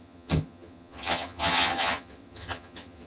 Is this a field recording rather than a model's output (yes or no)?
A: no